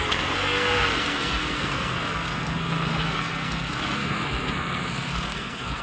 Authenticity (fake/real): fake